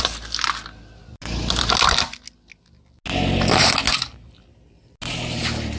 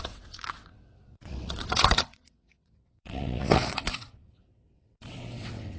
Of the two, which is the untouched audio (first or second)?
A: first